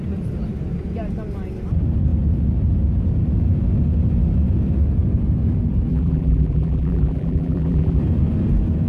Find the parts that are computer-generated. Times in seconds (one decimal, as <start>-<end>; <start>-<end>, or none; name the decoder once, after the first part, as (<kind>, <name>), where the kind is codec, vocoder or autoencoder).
5.9-8.0 (vocoder, BigVGAN v2)